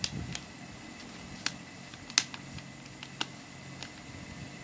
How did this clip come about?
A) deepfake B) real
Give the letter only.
B